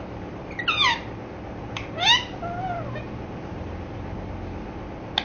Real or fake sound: real